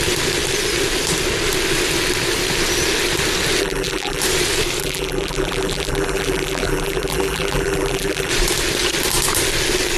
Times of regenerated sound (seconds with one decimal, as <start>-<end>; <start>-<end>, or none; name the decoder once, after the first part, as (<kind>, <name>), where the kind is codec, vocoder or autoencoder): 3.6-4.2 (vocoder, BigVGAN v2); 4.8-8.3